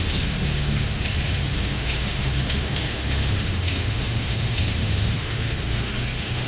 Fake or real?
fake